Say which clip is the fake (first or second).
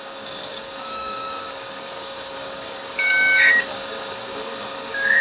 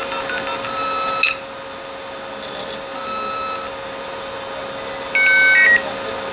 first